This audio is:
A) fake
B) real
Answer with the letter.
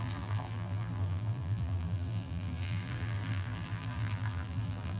A